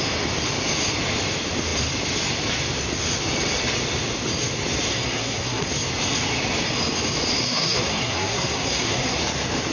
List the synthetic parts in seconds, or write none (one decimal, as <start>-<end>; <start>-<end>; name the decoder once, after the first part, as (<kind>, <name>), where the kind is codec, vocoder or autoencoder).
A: 4.9-5.7 (codec, SNAC); 7.4-9.2